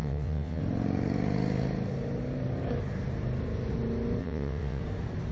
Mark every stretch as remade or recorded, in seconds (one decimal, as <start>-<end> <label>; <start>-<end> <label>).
0.0-0.6 remade; 0.6-4.2 recorded; 4.2-4.8 remade; 4.8-5.3 recorded